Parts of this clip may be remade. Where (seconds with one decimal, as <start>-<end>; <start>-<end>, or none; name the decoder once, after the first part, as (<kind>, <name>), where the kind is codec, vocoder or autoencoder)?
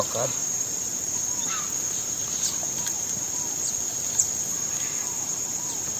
0.4-1.7 (vocoder, BigVGAN v2); 5.0-6.0